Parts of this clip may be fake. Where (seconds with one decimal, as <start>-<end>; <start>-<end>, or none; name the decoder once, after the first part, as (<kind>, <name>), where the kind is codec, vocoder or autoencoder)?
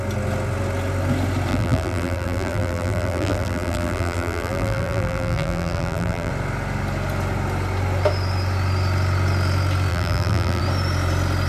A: 1.5-6.3 (vocoder, BigVGAN v2); 9.9-10.6